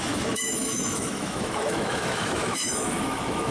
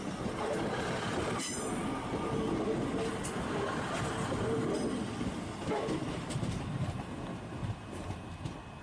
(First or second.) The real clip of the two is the second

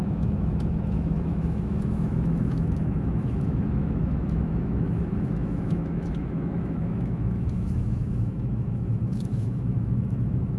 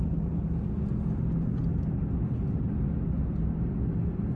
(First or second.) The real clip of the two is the second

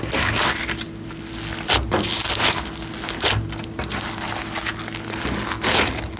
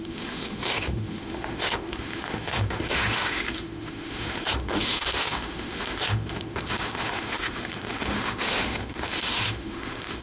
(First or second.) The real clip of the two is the first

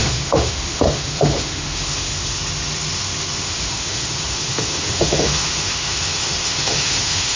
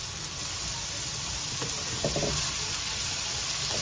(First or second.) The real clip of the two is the second